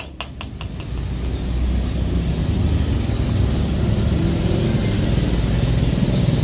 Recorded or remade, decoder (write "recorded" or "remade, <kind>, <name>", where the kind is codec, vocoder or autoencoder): recorded